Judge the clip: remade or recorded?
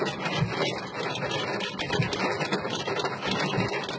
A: recorded